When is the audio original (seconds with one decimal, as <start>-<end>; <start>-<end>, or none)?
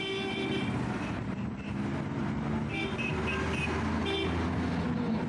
0.0-5.3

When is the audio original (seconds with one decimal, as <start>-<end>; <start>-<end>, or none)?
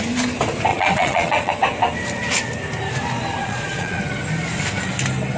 0.0-0.7; 1.5-3.4; 4.0-5.4